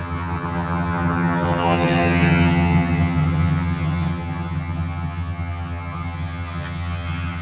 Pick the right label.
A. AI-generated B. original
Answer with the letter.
A